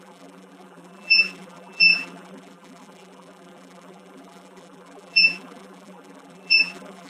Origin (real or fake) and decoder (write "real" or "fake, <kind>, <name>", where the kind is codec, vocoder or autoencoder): fake, vocoder, BigVGAN v2